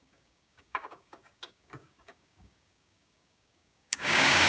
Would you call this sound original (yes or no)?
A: no